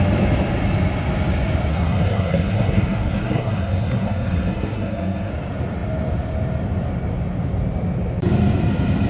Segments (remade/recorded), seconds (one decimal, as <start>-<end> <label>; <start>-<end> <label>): 0.0-1.7 recorded; 1.7-5.3 remade; 5.3-9.1 recorded